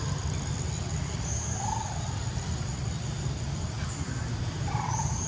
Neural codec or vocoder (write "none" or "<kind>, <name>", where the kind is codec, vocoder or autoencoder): none